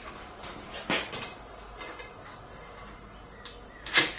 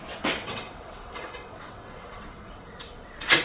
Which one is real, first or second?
first